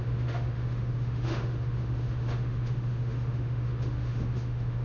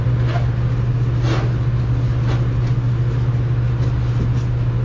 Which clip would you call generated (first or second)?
first